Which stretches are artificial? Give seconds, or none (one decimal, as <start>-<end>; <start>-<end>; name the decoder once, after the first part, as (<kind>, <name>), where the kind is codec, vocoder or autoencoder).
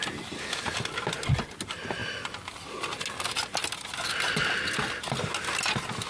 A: none